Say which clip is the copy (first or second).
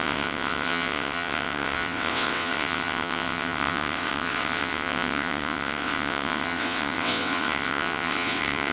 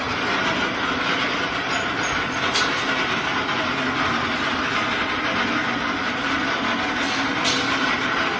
first